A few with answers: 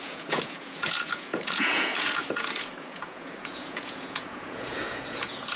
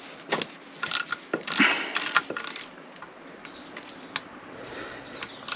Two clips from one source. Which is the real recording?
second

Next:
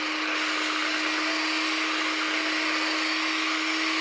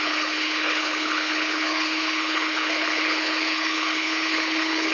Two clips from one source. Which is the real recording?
first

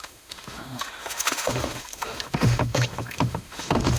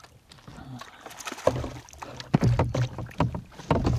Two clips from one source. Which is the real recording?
second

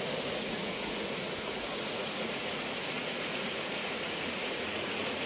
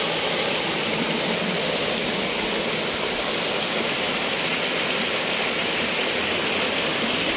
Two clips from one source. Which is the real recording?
second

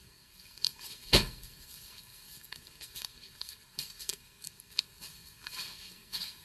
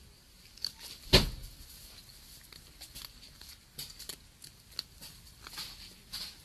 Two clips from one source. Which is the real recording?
second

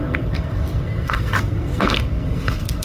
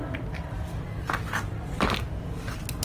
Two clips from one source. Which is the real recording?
second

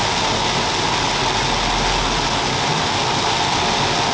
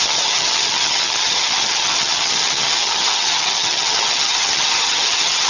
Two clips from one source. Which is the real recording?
first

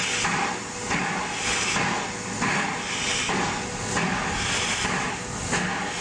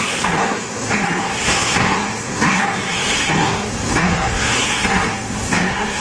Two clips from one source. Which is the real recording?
first